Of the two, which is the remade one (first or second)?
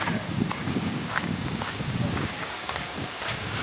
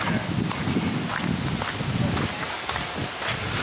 first